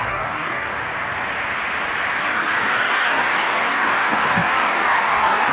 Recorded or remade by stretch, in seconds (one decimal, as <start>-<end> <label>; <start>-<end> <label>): 0.0-0.7 remade; 0.7-2.2 recorded; 2.2-5.5 remade